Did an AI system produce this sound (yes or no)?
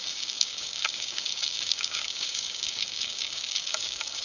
yes